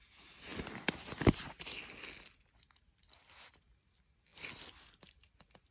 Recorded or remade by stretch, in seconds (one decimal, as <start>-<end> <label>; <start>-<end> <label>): 0.0-5.7 recorded